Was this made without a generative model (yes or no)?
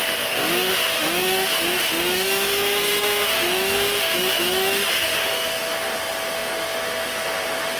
no